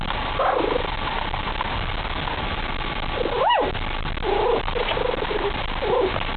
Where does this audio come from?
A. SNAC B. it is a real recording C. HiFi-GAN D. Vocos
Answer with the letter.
B